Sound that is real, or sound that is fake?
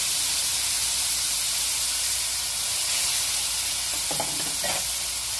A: real